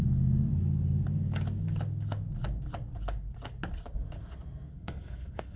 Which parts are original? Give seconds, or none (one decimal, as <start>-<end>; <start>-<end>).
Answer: 0.0-4.7